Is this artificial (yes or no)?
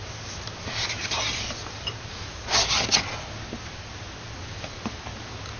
no